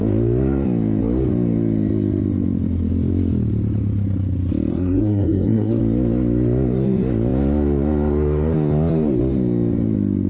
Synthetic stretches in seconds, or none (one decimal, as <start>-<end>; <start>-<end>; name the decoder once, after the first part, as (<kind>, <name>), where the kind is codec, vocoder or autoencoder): 4.7-5.8 (codec, SNAC)